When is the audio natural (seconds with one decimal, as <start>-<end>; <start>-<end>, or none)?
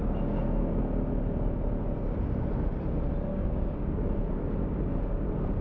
0.8-3.3; 4.0-5.6